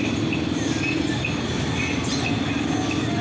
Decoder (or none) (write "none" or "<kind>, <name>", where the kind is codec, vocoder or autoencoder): none